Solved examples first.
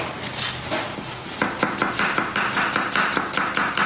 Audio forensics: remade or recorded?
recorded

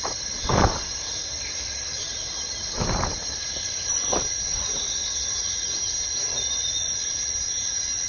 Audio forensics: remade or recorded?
remade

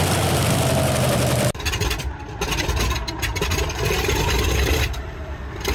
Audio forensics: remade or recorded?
remade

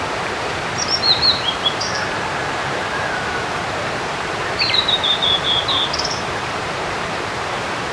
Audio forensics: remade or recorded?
remade